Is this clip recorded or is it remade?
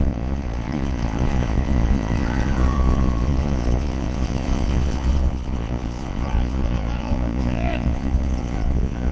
remade